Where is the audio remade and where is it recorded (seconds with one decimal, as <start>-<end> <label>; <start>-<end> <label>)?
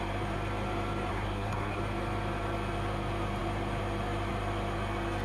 0.0-1.1 recorded; 1.1-1.8 remade; 1.8-5.2 recorded